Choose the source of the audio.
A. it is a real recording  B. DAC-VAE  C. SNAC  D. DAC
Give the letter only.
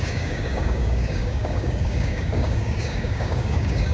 D